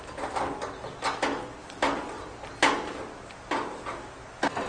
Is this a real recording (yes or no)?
yes